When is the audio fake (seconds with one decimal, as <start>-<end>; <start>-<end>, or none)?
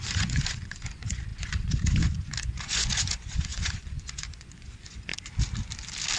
0.0-5.1